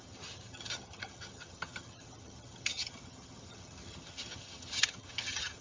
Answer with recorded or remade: remade